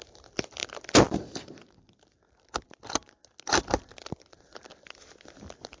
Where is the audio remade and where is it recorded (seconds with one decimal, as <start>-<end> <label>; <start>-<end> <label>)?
0.0-5.8 recorded